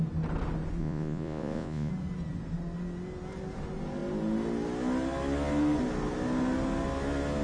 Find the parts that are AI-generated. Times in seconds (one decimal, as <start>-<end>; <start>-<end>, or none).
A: 0.8-1.9